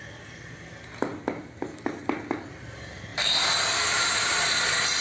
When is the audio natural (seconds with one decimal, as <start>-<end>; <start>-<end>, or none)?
0.0-3.1; 4.3-5.0